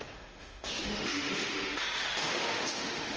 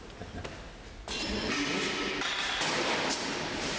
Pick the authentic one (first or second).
second